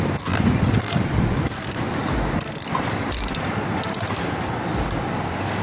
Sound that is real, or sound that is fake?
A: fake